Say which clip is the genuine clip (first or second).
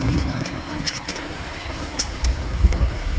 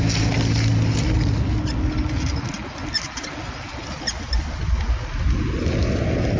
second